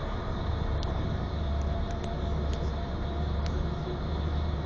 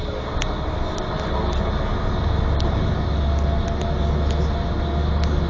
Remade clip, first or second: first